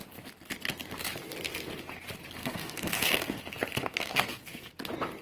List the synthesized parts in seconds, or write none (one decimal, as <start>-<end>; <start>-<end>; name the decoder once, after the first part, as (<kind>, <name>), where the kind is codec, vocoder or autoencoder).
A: 2.4-3.4 (codec, SNAC); 3.8-4.7